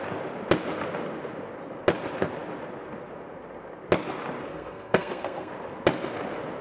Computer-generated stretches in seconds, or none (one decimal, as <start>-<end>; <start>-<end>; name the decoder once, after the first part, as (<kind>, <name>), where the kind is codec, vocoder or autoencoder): 4.5-5.5 (codec, SNAC)